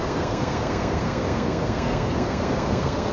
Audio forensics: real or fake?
fake